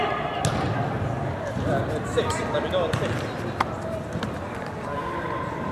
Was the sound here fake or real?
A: real